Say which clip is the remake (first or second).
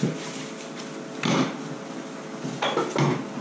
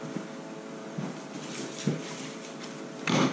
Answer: second